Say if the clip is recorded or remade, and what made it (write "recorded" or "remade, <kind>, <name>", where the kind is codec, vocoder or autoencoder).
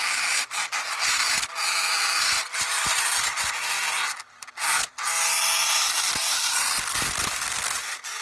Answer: recorded